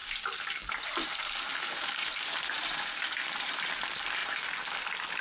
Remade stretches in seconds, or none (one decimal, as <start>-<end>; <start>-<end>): 1.5-3.7